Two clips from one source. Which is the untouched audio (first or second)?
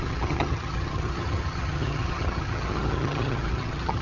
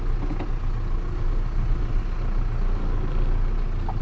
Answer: second